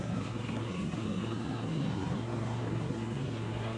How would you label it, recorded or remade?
remade